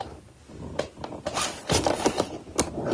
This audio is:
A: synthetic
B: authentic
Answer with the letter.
B